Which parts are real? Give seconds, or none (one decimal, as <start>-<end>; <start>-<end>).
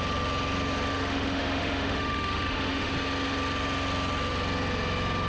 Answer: 0.0-0.9; 2.9-5.3